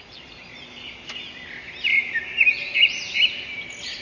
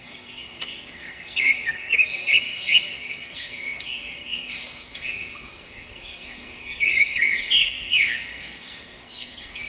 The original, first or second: first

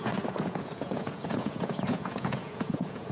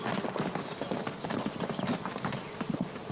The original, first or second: second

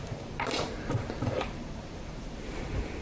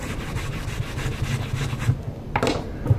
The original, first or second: second